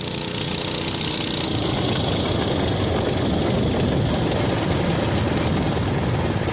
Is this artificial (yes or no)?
no